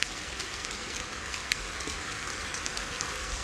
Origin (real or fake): fake